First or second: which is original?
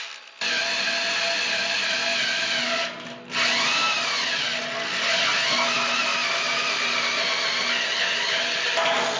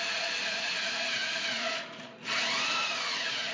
first